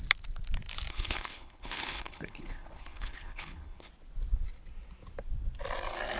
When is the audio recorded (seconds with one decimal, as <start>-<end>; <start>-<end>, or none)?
0.0-0.9; 3.9-6.2